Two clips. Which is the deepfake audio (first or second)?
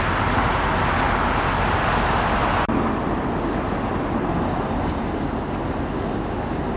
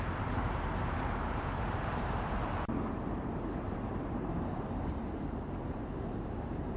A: second